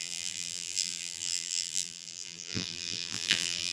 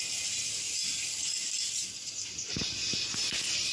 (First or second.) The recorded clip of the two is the second